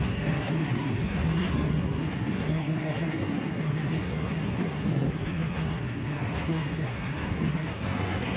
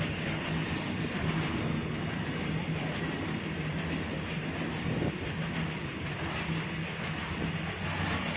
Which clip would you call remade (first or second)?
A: first